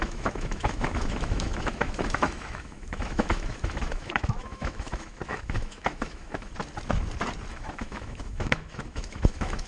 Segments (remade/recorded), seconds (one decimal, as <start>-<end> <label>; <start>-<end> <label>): 0.0-6.5 remade; 6.5-7.5 recorded; 7.5-9.7 remade